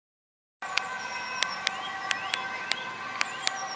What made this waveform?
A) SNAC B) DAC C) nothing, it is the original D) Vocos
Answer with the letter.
C